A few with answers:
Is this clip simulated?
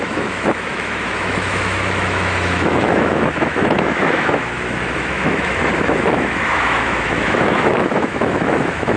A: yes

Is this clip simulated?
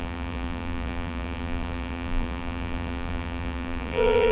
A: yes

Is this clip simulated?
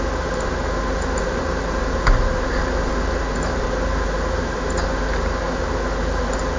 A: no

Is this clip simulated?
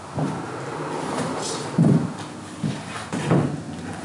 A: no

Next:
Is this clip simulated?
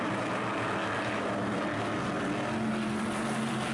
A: no